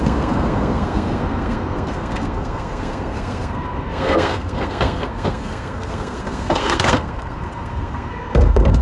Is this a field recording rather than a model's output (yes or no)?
no